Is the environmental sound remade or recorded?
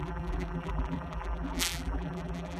remade